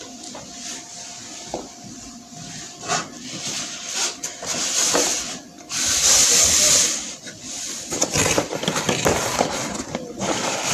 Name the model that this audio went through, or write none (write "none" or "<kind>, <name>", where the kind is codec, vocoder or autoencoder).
none